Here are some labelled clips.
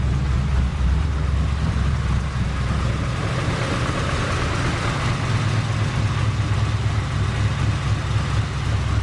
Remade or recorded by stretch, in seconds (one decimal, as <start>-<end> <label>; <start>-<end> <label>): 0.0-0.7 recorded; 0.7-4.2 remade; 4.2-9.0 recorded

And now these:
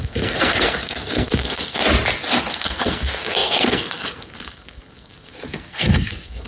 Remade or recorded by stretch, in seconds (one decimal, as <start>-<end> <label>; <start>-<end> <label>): 0.0-1.8 remade; 1.8-2.5 recorded; 2.5-6.5 remade

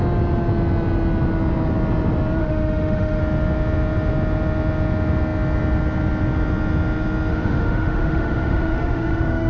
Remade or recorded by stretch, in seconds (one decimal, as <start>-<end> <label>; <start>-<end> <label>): 0.0-2.4 recorded; 2.4-3.2 remade; 3.2-7.3 recorded; 7.3-9.5 remade